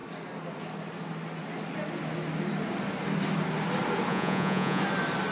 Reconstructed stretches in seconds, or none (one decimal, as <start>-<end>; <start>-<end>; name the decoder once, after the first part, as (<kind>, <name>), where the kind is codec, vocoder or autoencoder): 4.1-4.8 (vocoder, Vocos)